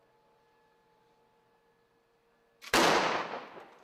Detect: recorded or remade recorded